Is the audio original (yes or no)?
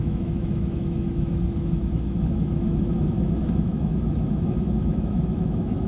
no